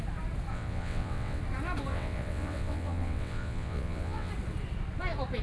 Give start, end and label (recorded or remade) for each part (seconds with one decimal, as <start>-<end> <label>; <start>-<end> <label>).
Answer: 0.0-0.5 recorded; 0.5-1.4 remade; 1.4-1.9 recorded; 1.9-4.3 remade; 4.3-5.4 recorded